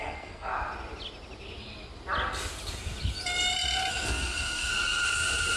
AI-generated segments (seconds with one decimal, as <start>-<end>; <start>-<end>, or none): 0.0-0.5; 3.9-4.7